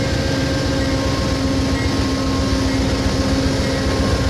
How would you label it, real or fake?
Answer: real